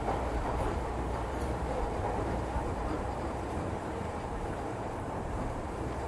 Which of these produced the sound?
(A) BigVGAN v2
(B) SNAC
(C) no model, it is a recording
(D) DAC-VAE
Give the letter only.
A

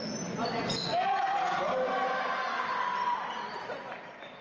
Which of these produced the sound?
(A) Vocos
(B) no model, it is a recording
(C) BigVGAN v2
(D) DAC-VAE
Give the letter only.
B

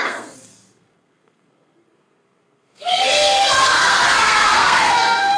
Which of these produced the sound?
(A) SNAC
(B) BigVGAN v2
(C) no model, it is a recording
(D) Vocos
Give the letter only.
A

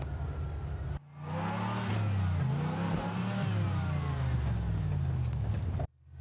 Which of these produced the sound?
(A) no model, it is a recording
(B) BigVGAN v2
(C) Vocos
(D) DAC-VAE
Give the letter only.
A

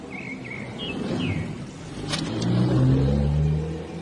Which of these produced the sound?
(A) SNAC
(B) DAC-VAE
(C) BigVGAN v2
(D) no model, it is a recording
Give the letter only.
D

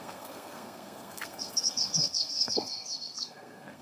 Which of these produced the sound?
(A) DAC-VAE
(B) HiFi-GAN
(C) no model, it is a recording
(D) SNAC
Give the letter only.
D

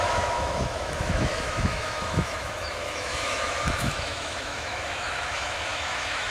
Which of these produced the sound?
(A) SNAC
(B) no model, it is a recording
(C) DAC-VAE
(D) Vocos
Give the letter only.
C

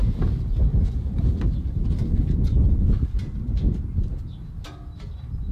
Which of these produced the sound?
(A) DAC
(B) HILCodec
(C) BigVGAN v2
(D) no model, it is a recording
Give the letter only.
D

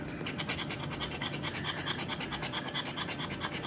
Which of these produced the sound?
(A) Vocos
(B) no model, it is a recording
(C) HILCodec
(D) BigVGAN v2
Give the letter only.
B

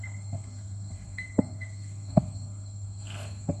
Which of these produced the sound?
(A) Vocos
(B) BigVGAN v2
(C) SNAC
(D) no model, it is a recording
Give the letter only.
C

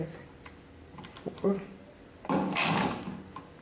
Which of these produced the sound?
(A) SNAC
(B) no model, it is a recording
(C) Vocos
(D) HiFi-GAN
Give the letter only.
B